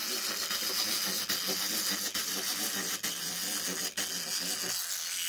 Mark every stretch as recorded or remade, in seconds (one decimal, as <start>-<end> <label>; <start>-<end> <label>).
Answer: 0.0-2.2 recorded; 2.2-3.3 remade; 3.3-5.3 recorded